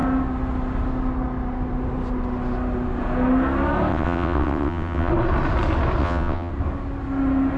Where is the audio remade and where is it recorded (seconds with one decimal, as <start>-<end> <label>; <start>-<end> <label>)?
0.0-3.9 recorded; 3.9-5.1 remade; 5.1-6.0 recorded; 6.0-6.5 remade; 6.5-7.6 recorded